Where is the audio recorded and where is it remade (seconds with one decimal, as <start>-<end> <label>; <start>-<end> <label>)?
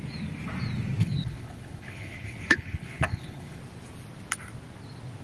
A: 0.0-1.0 recorded; 1.0-3.6 remade; 3.6-5.2 recorded